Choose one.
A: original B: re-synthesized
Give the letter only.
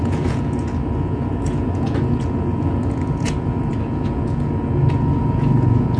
B